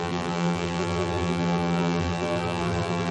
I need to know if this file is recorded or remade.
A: remade